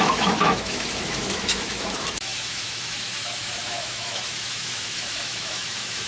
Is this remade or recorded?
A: remade